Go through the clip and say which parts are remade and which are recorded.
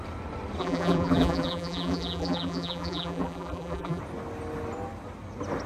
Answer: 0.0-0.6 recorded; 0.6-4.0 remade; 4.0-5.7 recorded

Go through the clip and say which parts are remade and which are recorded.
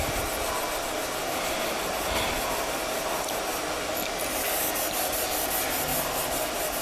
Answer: 0.0-6.8 recorded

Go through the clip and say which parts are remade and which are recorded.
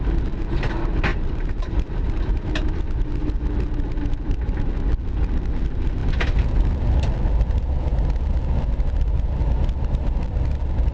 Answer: 0.0-1.1 recorded; 1.1-2.5 remade; 2.5-10.9 recorded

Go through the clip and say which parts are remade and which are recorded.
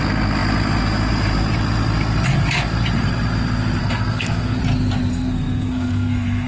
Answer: 0.0-3.8 recorded; 3.8-4.6 remade; 4.6-5.1 recorded; 5.1-6.5 remade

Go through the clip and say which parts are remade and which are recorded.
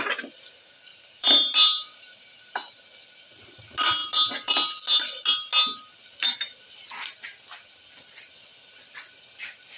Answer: 0.0-0.9 recorded; 0.9-2.5 remade; 2.5-9.8 recorded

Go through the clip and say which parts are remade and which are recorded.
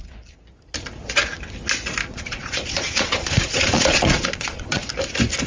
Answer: 0.0-2.1 recorded; 2.1-4.9 remade; 4.9-5.5 recorded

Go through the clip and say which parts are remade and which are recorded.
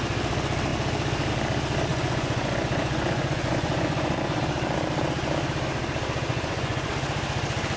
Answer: 0.0-1.9 recorded; 1.9-4.4 remade; 4.4-6.3 recorded; 6.3-6.9 remade; 6.9-7.8 recorded